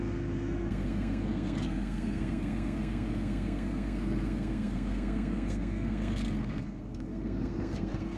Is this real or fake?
fake